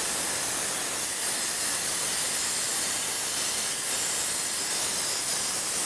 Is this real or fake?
real